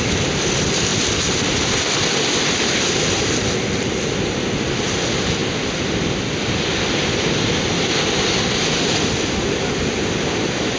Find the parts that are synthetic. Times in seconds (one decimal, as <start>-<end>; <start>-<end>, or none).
none